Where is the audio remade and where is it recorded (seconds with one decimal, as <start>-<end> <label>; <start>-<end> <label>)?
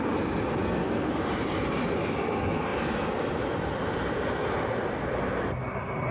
0.0-0.6 recorded; 0.6-1.1 remade; 1.1-6.1 recorded